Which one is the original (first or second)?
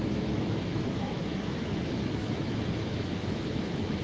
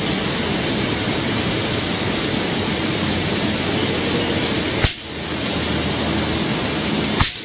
second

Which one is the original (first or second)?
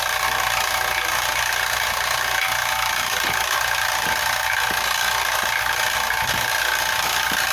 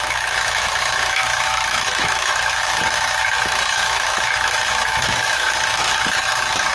first